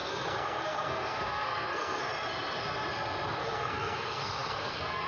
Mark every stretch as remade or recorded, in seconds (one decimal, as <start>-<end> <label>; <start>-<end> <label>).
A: 0.0-2.1 remade; 2.1-3.4 recorded; 3.4-5.1 remade